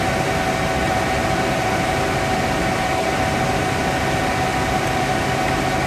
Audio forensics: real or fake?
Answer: real